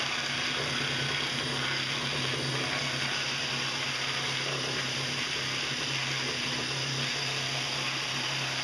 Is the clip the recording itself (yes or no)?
yes